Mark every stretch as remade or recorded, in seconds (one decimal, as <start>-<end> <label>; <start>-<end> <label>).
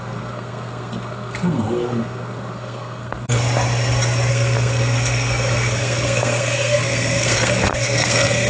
0.0-3.4 remade; 3.4-4.3 recorded; 4.3-8.5 remade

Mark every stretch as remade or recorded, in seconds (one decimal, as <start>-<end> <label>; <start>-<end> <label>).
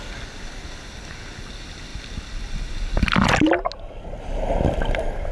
0.0-5.3 recorded